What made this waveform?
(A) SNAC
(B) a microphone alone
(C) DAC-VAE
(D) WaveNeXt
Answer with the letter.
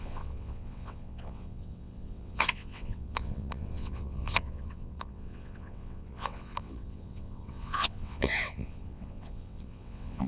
D